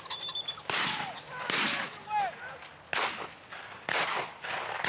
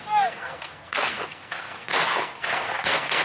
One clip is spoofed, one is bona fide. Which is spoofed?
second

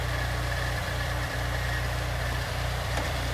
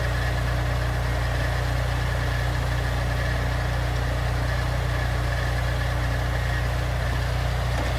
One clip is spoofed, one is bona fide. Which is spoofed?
first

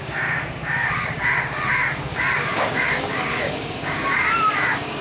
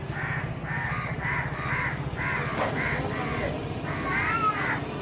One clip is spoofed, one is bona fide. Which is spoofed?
first